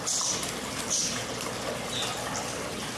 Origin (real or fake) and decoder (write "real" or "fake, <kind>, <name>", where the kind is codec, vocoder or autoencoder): real